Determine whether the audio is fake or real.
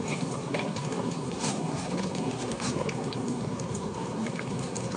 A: fake